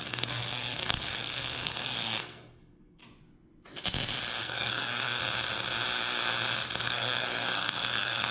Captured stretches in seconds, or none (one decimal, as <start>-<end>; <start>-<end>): 3.0-4.4; 5.2-6.8